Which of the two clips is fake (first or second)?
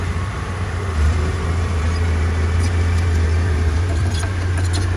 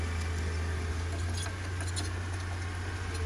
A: first